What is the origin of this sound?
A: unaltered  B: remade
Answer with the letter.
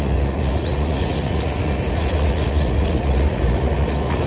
B